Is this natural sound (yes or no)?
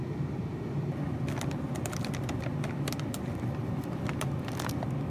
no